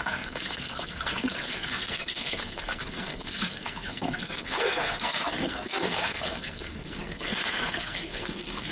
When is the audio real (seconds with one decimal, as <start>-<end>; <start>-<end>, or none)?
none